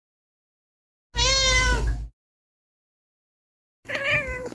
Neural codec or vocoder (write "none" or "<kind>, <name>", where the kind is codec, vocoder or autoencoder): none